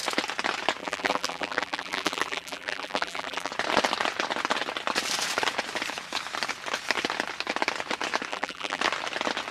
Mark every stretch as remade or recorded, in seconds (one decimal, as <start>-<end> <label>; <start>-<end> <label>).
0.0-0.8 recorded; 0.8-3.5 remade; 3.5-8.3 recorded; 8.3-8.8 remade; 8.8-9.5 recorded